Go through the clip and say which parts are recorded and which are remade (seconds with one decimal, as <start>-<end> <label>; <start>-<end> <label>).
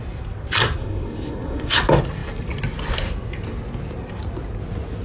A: 0.0-0.8 recorded; 0.8-1.8 remade; 1.8-5.0 recorded